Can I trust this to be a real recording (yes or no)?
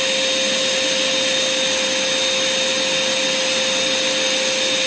yes